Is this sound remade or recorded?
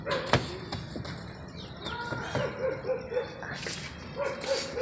recorded